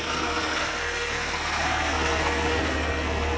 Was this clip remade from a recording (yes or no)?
yes